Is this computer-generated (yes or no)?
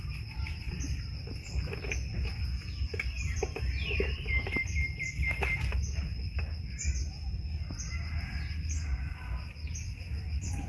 no